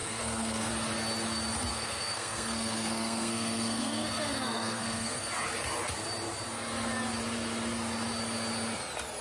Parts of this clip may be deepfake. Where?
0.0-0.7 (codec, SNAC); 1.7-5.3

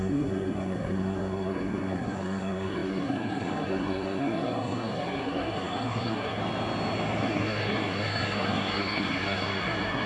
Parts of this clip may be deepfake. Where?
0.0-6.4 (codec, SNAC); 7.2-10.1